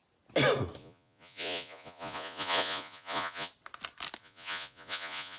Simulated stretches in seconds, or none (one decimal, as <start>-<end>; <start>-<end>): 0.8-3.5; 4.2-5.4